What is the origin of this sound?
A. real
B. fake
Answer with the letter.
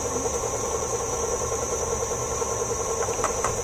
B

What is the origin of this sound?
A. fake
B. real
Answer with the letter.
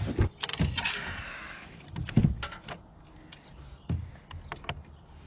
B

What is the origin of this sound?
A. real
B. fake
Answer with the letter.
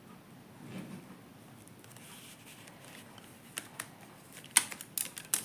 A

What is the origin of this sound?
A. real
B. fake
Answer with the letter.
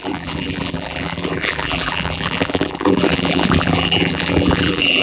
B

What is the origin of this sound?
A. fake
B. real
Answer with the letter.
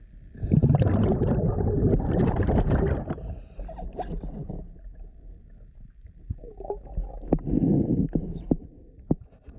B